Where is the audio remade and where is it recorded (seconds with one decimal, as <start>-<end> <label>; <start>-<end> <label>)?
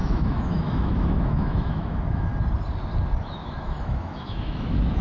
0.0-2.3 remade; 2.3-3.2 recorded; 3.2-5.0 remade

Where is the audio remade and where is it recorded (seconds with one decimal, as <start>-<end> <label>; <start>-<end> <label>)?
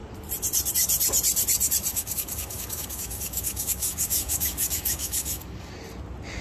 0.0-1.9 recorded; 1.9-5.7 remade; 5.7-6.4 recorded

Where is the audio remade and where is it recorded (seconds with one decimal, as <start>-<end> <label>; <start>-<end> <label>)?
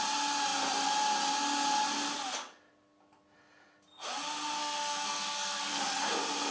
0.0-4.6 recorded; 4.6-5.8 remade; 5.8-6.5 recorded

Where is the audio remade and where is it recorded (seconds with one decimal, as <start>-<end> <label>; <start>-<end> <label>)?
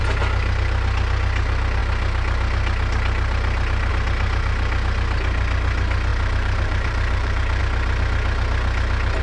0.0-6.1 recorded; 6.1-7.6 remade; 7.6-9.2 recorded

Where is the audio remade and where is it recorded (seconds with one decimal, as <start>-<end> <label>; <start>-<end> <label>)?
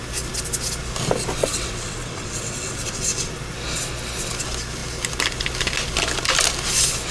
0.0-1.4 recorded; 1.4-3.3 remade; 3.3-7.1 recorded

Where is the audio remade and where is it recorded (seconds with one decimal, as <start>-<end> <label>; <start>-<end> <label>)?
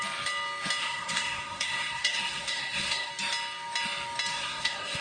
0.0-0.8 recorded; 0.8-3.1 remade; 3.1-4.3 recorded; 4.3-5.0 remade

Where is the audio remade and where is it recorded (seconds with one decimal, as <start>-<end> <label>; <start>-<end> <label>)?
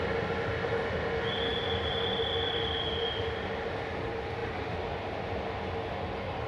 0.0-6.5 recorded